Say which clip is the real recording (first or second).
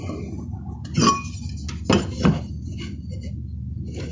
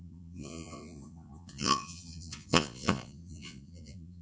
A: first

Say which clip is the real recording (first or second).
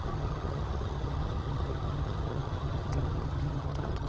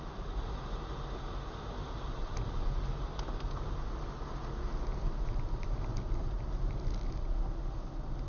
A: second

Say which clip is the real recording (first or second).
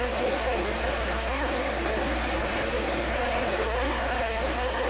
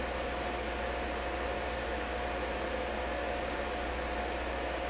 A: second